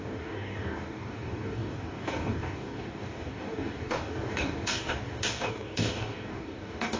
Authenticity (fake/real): fake